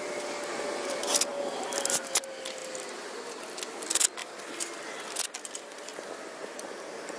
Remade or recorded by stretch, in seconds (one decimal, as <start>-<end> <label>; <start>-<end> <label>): 0.0-1.3 recorded; 1.3-2.2 remade; 2.2-4.2 recorded; 4.2-5.5 remade; 5.5-7.2 recorded